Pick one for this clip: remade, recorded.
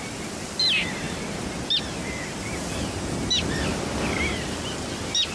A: recorded